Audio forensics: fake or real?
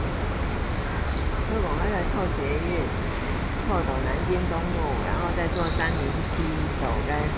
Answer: real